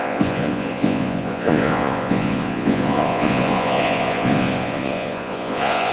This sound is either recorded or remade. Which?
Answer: remade